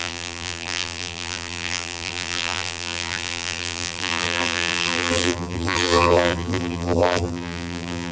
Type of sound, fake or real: fake